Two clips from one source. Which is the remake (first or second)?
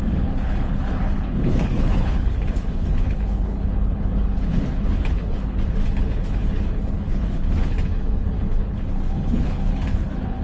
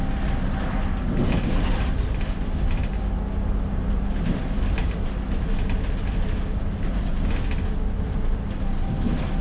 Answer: first